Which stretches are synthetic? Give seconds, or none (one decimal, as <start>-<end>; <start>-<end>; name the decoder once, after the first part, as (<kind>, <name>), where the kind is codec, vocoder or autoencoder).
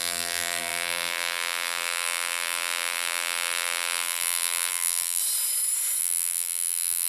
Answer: 0.0-5.2 (vocoder, BigVGAN v2); 6.0-7.1